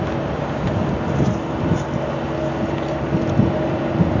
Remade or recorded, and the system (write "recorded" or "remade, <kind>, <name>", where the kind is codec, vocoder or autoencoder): recorded